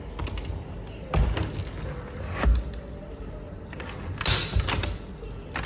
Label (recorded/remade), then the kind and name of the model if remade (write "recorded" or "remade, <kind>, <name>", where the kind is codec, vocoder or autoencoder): recorded